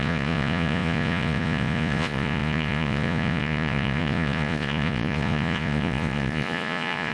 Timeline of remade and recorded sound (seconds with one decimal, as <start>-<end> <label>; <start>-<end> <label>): 0.0-7.1 remade